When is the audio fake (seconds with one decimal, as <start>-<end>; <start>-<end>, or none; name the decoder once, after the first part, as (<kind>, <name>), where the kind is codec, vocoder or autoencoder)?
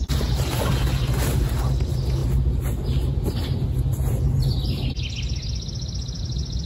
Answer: 0.0-0.7 (vocoder, BigVGAN v2)